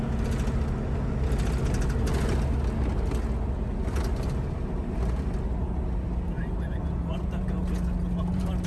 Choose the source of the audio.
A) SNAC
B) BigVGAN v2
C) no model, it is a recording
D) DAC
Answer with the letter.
C